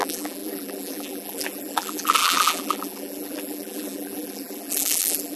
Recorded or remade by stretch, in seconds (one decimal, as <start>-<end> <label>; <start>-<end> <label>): 0.0-5.4 remade